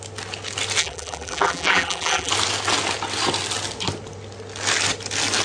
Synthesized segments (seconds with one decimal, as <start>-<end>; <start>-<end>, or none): 0.8-2.3